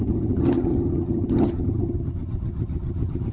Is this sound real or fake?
fake